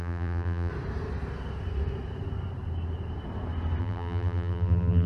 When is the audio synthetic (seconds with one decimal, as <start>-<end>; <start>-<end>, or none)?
0.0-0.7; 3.8-5.1